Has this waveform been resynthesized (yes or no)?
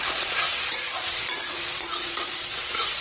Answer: yes